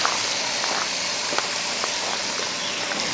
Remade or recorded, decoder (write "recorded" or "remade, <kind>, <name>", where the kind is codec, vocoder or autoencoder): recorded